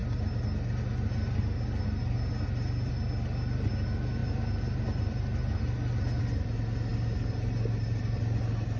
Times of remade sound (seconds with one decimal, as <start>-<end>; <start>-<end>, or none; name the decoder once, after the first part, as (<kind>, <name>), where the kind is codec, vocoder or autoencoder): none